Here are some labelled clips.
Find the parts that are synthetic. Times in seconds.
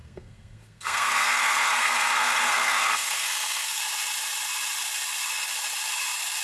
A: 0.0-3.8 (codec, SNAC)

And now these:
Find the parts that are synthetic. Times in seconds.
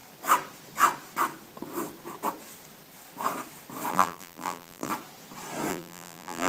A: 3.9-4.9 (vocoder, BigVGAN v2); 5.7-6.5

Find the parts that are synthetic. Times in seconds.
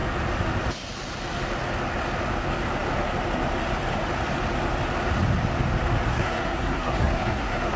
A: 6.1-7.8 (codec, SNAC)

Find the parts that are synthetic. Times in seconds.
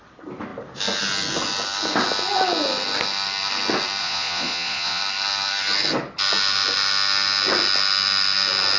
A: 4.0-5.0 (vocoder, Vocos)